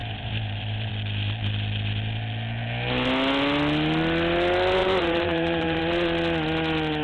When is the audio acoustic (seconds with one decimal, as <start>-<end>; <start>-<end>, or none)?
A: 0.9-4.8; 5.8-7.0